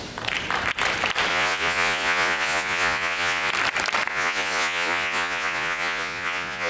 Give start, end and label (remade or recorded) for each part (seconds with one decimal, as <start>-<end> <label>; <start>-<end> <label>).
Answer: 0.0-1.3 recorded; 1.3-3.5 remade; 3.5-4.1 recorded; 4.1-6.7 remade